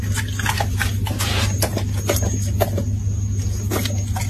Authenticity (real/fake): real